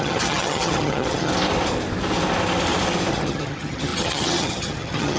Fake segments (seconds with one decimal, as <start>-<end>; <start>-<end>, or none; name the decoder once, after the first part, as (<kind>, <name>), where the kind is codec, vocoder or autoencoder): 0.0-1.3 (vocoder, HiFi-GAN); 3.1-5.2